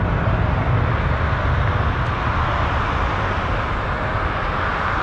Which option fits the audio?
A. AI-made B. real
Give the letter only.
B